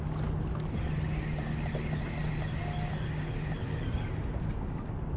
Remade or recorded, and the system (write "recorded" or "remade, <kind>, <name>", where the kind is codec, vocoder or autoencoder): recorded